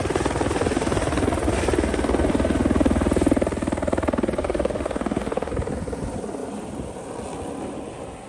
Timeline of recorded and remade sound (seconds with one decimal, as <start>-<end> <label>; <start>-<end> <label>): 0.0-4.4 recorded; 4.4-5.5 remade; 5.5-8.3 recorded